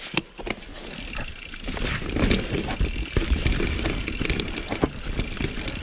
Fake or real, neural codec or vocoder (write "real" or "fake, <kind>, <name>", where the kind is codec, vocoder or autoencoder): real